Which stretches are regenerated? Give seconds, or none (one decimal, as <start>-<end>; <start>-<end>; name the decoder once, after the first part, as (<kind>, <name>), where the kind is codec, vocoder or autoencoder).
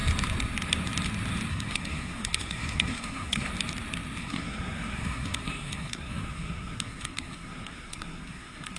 1.5-3.5 (codec, SNAC); 4.2-8.8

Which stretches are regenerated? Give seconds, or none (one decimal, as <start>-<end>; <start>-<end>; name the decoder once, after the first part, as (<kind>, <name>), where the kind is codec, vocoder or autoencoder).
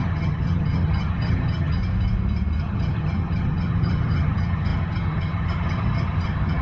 0.0-1.8 (vocoder, HiFi-GAN); 2.6-6.6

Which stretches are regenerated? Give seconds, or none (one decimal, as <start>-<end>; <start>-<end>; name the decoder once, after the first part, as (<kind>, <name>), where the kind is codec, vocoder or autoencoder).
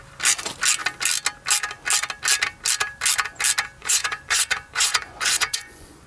3.8-6.1 (vocoder, Vocos)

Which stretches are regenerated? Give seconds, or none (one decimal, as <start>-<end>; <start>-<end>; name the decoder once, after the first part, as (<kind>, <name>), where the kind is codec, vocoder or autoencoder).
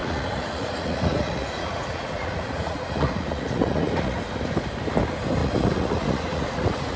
0.0-4.2 (vocoder, Vocos); 5.4-7.0